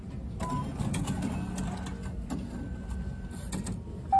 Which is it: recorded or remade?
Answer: recorded